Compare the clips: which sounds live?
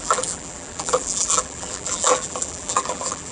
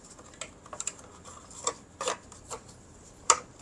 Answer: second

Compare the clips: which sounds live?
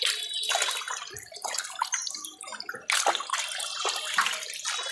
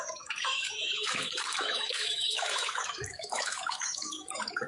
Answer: first